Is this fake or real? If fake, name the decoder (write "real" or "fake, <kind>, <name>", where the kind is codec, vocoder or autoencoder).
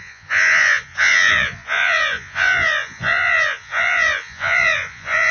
fake, vocoder, Vocos